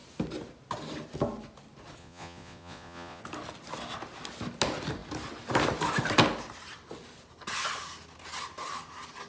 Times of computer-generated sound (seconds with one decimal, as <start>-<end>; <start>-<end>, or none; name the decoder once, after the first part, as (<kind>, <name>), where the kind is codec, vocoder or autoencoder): 2.0-3.2 (vocoder, Vocos)